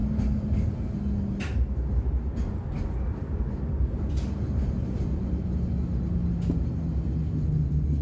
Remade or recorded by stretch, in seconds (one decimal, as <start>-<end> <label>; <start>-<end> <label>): 0.0-8.0 recorded